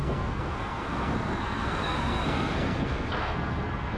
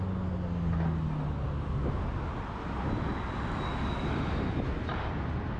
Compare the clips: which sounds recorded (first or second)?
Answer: second